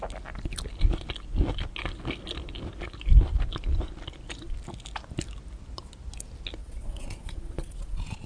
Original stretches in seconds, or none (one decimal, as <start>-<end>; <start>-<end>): 0.0-6.6